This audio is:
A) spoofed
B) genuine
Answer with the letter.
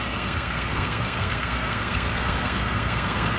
A